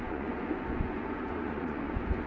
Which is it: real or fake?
fake